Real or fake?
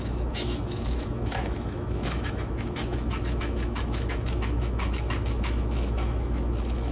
fake